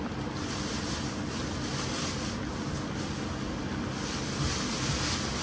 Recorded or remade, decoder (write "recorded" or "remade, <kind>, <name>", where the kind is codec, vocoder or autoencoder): recorded